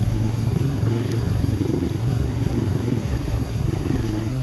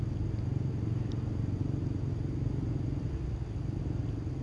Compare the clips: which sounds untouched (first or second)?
second